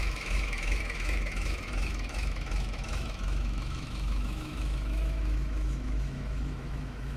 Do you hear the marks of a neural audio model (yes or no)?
yes